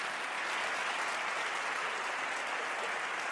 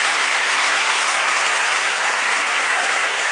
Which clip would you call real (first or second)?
first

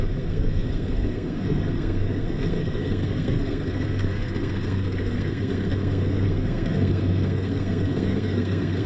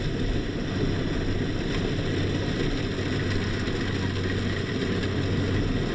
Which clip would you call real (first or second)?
second